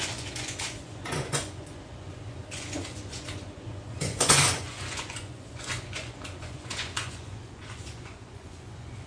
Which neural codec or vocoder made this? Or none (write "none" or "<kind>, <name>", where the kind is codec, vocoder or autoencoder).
vocoder, Vocos